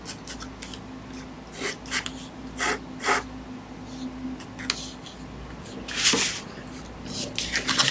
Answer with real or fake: real